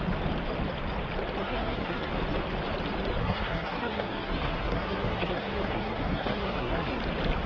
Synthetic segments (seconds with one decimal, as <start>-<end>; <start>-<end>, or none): 1.4-2.1; 3.2-7.0